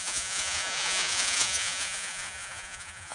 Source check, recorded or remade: remade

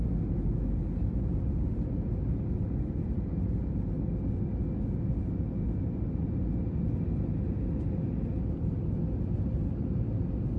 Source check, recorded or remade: recorded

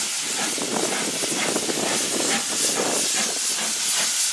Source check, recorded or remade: recorded